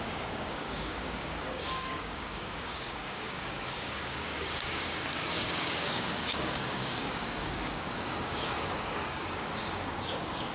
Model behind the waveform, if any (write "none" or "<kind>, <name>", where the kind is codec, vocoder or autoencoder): codec, DAC